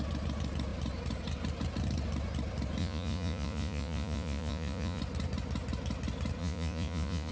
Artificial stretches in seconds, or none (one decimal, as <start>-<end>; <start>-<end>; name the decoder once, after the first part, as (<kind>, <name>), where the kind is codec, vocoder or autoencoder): 2.8-5.0 (vocoder, Vocos); 6.4-7.3